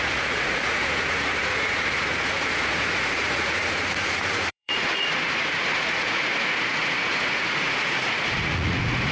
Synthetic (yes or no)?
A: yes